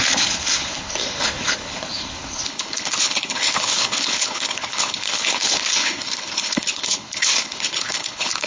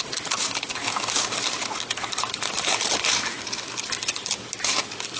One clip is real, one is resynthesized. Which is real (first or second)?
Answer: second